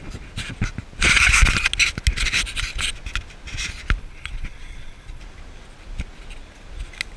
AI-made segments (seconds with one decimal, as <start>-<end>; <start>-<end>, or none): 4.0-5.2